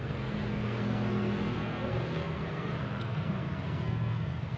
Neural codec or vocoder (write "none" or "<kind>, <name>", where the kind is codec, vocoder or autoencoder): codec, SNAC